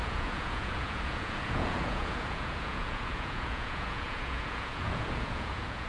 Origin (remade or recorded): remade